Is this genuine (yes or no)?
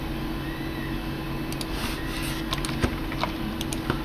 yes